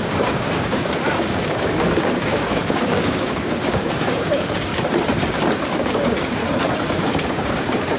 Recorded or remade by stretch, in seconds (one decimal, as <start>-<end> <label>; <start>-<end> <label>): 0.0-4.7 remade; 4.7-5.8 recorded; 5.8-6.4 remade; 6.4-6.9 recorded; 6.9-8.0 remade